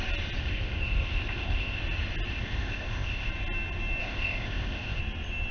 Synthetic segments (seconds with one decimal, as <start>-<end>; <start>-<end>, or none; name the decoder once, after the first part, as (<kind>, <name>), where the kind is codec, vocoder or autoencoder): 0.4-1.8 (codec, ZipCodec); 2.3-3.3; 4.0-5.0